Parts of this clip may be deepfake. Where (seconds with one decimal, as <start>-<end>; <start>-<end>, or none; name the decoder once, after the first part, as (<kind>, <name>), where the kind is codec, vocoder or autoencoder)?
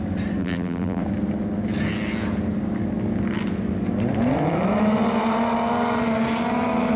0.4-1.0 (vocoder, BigVGAN v2)